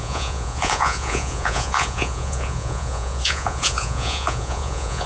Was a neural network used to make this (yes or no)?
yes